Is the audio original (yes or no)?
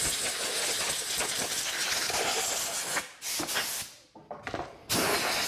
yes